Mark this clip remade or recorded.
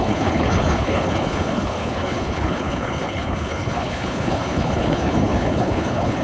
remade